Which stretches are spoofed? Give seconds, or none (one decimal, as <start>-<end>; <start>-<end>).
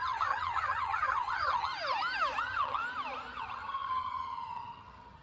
0.0-1.7; 2.4-2.8; 3.4-5.2